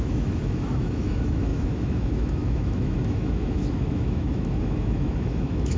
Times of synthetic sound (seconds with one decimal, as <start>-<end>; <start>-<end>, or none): 0.0-5.8